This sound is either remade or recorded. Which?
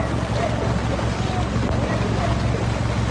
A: recorded